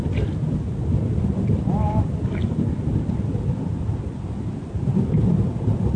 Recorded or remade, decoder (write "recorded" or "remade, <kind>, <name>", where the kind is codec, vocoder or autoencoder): recorded